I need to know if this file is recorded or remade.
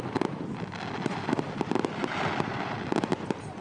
recorded